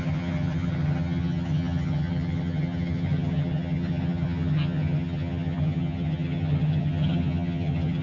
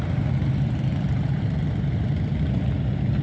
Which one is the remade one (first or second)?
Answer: first